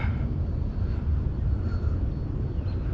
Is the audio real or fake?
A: real